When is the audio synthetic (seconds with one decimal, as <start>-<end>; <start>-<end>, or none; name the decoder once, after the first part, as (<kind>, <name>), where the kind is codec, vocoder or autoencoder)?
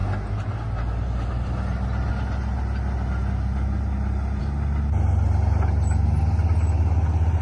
none